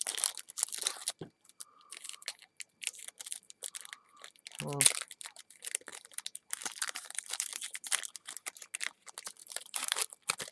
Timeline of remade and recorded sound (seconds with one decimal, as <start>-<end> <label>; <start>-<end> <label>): 0.0-1.9 recorded; 1.9-2.5 remade; 2.5-5.9 recorded; 5.9-7.2 remade; 7.2-9.4 recorded; 9.4-10.0 remade; 10.0-10.5 recorded